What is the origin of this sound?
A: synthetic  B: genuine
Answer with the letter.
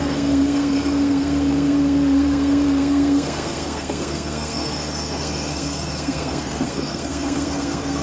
A